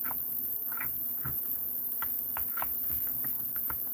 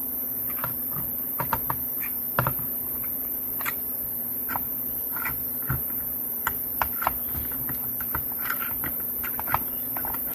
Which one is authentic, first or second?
second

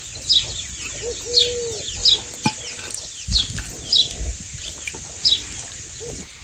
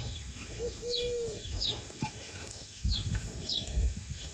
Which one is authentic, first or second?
first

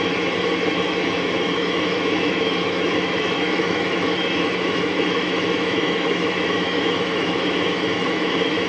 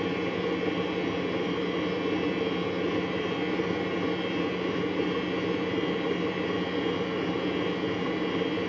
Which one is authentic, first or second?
second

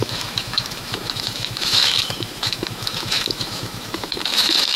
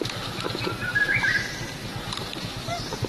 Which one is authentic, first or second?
second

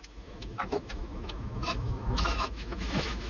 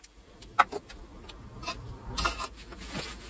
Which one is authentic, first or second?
second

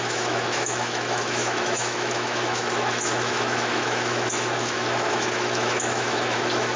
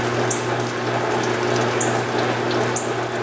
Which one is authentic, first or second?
second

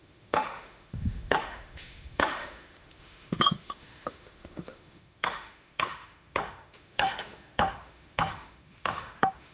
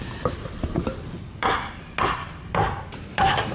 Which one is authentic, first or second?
second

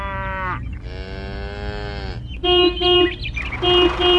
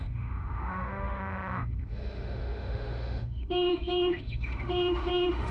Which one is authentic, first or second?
first